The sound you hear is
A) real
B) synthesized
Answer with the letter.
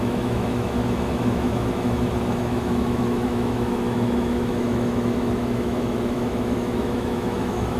B